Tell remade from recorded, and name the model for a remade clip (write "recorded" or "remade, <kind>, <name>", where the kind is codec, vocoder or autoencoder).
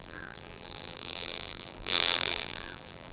remade, vocoder, BigVGAN v2